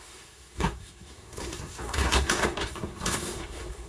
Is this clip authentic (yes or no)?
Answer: no